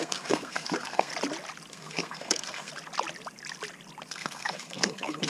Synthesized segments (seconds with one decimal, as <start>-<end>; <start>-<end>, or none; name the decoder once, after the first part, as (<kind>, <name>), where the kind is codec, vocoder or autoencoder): 0.0-1.1 (codec, SNAC); 1.7-2.7; 4.1-5.3